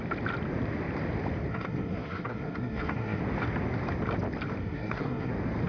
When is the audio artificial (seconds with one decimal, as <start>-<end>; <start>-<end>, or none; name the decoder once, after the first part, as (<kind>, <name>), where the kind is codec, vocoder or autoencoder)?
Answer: 1.5-3.2 (codec, SNAC); 4.6-5.3